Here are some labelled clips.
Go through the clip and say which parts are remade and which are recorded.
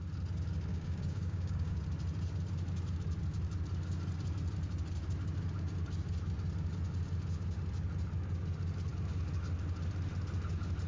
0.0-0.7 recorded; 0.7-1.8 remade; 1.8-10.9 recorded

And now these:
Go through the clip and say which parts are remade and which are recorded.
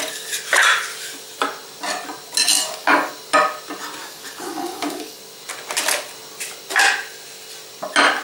0.0-2.5 recorded; 2.5-3.1 remade; 3.1-4.0 recorded; 4.0-5.2 remade; 5.2-8.2 recorded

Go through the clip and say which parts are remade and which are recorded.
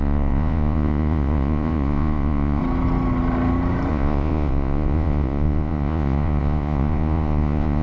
0.0-2.6 remade; 2.6-3.9 recorded; 3.9-7.8 remade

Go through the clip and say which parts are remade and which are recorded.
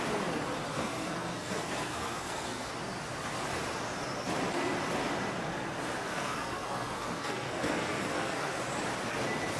0.0-0.7 recorded; 0.7-2.7 remade; 2.7-6.0 recorded; 6.0-8.6 remade; 8.6-9.6 recorded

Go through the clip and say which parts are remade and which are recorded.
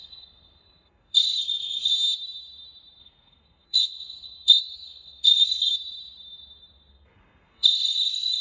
0.0-1.9 remade; 1.9-3.0 recorded; 3.0-5.7 remade; 5.7-6.9 recorded; 6.9-8.4 remade